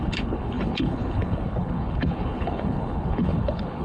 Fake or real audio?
fake